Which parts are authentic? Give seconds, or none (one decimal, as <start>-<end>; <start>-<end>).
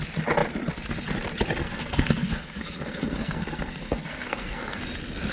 0.0-1.6; 4.8-5.3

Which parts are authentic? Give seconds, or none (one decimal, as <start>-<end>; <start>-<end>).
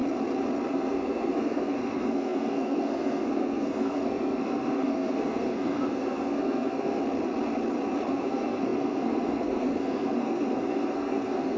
0.0-0.7; 7.0-8.1